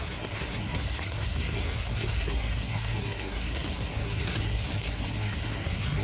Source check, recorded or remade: remade